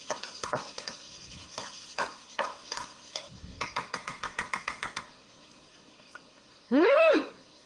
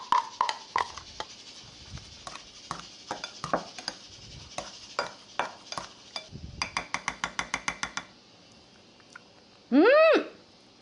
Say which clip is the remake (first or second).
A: first